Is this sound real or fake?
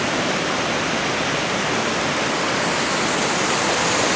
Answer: real